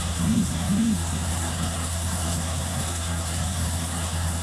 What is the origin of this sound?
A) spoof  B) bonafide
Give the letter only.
A